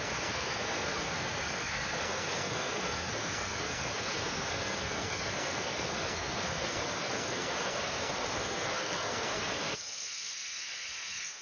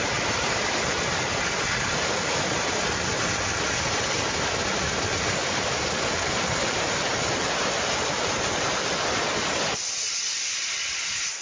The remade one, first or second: first